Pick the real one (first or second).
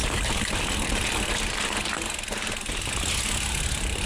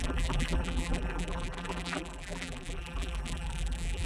first